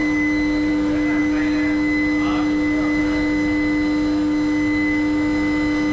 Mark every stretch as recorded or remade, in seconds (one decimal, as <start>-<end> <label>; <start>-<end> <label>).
0.0-5.9 recorded